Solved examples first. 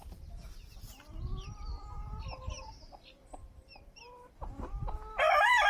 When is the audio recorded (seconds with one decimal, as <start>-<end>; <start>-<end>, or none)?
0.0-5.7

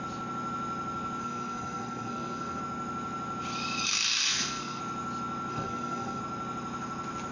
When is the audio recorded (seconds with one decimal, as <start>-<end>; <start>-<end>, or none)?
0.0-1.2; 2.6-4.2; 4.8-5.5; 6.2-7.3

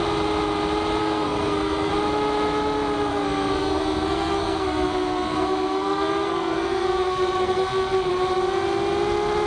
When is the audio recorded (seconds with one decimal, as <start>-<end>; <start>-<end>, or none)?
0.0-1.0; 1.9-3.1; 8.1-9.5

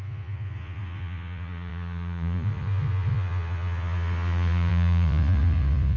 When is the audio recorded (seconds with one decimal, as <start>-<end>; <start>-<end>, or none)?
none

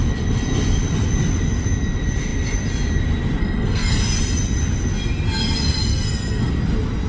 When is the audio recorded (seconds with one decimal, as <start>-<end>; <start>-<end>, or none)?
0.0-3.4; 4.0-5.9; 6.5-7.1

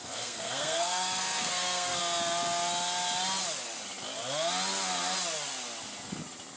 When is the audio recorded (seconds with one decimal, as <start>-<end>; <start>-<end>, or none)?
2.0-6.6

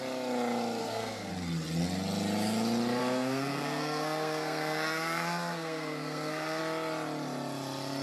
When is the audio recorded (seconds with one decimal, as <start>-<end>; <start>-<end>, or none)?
0.0-0.8; 1.3-3.0; 6.6-8.0